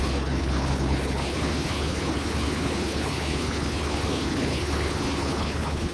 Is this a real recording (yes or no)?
no